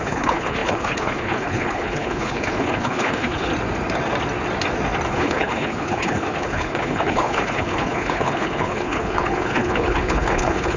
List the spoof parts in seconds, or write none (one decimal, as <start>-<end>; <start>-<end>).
0.0-3.5; 5.1-10.8

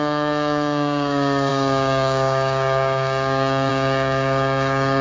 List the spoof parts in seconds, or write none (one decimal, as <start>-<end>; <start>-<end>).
0.0-5.0

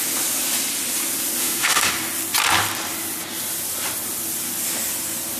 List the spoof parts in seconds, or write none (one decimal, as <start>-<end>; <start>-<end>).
1.4-1.9

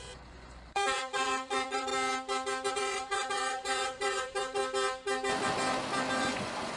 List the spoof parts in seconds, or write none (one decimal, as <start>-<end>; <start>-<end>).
0.0-1.9; 2.7-4.6; 6.2-6.8

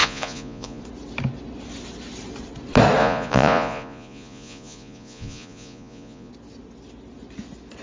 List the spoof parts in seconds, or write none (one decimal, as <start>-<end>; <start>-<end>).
0.0-0.8; 3.0-6.3

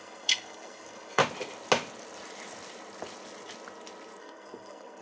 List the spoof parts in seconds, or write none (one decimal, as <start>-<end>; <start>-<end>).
0.0-1.2; 4.2-5.0